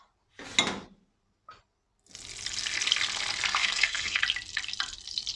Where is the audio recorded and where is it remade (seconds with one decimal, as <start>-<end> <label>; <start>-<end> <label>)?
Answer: 0.0-3.6 recorded; 3.6-4.2 remade; 4.2-5.3 recorded